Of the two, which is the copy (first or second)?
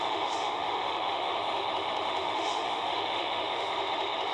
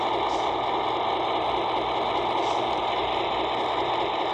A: first